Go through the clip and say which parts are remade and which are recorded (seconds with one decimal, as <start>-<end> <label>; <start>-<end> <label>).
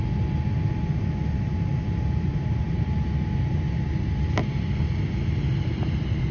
0.0-6.3 recorded